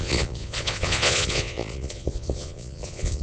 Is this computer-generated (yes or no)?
yes